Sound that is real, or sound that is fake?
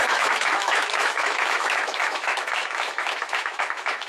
fake